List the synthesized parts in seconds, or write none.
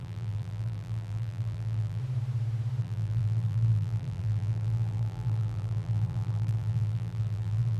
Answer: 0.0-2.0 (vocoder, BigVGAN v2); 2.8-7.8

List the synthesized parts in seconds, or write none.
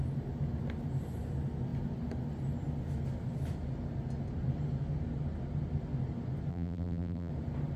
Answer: 6.5-7.3 (vocoder, BigVGAN v2)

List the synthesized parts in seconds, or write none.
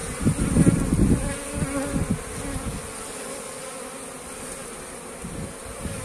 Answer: none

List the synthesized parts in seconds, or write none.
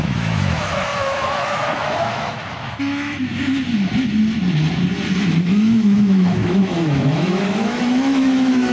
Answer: 0.0-3.3 (autoencoder, DAC-VAE); 5.2-8.7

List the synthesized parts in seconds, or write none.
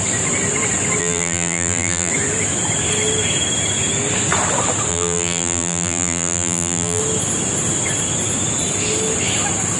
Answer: 1.0-2.1 (vocoder, BigVGAN v2); 4.9-7.0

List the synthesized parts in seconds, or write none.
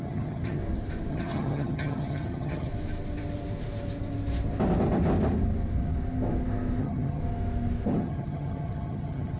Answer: 0.0-0.6 (vocoder, HiFi-GAN); 1.1-2.7; 6.8-7.2; 7.9-9.4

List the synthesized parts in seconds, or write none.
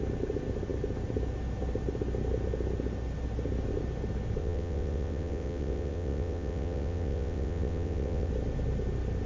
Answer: 4.4-8.3 (vocoder, WaveNeXt)